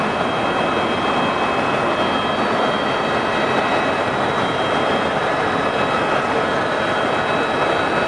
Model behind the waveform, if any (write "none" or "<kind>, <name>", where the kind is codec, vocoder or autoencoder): none